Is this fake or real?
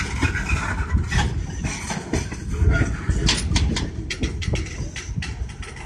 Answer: real